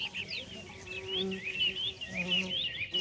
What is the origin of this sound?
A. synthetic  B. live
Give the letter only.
B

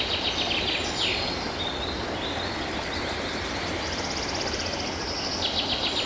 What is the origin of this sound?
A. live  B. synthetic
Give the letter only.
A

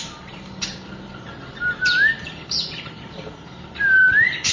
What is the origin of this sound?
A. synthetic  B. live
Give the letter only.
A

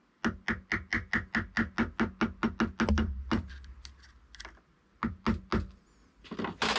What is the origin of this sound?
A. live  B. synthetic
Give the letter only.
A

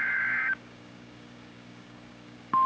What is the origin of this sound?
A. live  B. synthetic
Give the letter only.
B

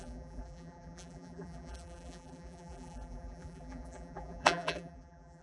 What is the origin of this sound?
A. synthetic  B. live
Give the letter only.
A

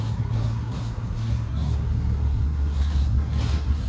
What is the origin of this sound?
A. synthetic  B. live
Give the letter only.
A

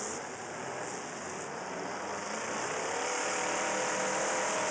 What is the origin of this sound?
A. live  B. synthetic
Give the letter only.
A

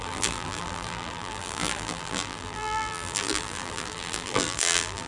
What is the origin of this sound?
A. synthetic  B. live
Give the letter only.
A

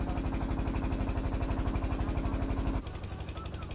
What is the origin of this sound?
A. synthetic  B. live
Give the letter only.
B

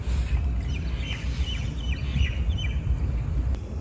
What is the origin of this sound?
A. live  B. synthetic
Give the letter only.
A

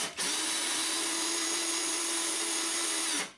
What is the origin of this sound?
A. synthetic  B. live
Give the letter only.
A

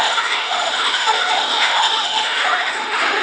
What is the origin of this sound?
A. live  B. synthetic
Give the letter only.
B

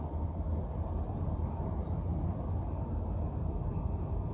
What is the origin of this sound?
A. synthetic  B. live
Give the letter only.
B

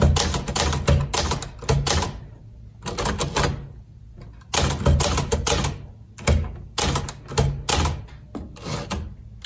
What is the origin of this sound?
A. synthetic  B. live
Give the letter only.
B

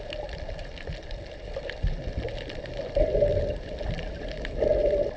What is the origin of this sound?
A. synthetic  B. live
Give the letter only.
B